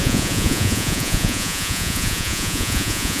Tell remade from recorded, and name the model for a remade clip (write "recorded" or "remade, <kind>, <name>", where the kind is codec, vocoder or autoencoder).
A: remade, vocoder, Vocos